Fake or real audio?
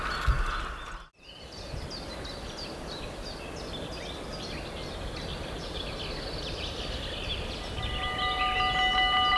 real